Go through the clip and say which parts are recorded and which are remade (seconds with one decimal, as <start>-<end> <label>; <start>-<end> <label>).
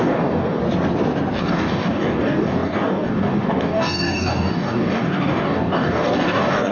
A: 0.0-0.6 remade; 0.6-1.3 recorded; 1.3-6.7 remade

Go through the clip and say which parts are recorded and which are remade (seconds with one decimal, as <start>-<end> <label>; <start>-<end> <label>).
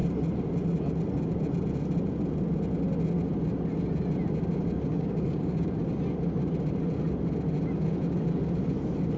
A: 0.0-4.9 recorded; 4.9-5.8 remade; 5.8-9.2 recorded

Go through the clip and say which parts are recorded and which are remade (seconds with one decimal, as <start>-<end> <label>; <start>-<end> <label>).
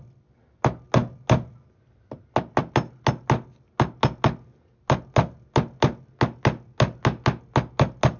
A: 0.0-8.2 recorded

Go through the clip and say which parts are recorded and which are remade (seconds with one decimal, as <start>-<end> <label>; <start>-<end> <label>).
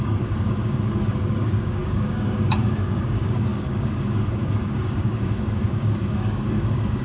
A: 0.0-7.0 remade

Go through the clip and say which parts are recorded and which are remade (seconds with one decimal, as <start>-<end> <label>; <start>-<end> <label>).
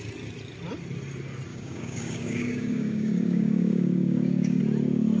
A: 0.0-1.5 recorded; 1.5-4.6 remade; 4.6-5.2 recorded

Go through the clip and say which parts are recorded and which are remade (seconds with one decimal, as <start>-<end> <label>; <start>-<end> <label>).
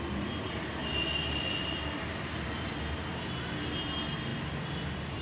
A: 0.0-5.2 recorded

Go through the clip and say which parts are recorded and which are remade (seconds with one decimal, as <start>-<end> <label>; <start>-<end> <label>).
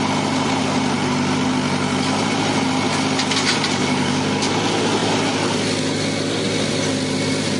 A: 0.0-3.8 recorded; 3.8-4.5 remade; 4.5-7.6 recorded